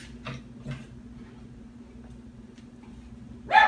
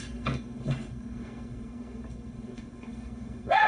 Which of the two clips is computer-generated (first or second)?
second